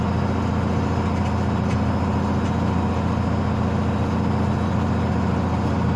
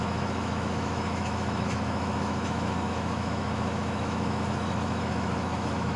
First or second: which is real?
first